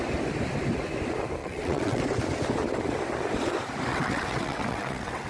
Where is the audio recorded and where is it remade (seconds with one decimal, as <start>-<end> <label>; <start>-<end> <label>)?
0.0-1.4 recorded; 1.4-2.0 remade; 2.0-3.9 recorded; 3.9-5.3 remade